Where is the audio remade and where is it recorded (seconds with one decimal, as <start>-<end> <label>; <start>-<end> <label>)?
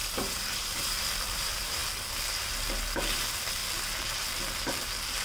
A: 0.0-0.8 recorded; 0.8-1.8 remade; 1.8-3.1 recorded; 3.1-3.6 remade; 3.6-4.6 recorded; 4.6-5.2 remade